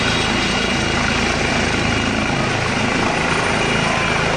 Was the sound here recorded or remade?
recorded